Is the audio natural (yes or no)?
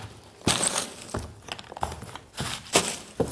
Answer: yes